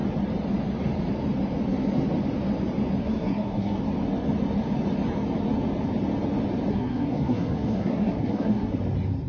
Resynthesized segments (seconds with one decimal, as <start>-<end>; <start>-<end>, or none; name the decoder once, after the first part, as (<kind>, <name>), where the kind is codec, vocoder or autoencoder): 3.0-3.8 (codec, SNAC); 6.7-8.8